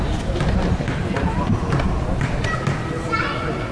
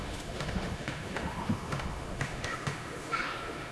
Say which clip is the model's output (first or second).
second